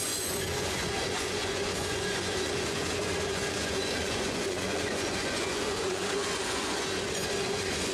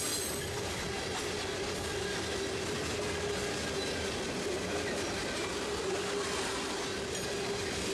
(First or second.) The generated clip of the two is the first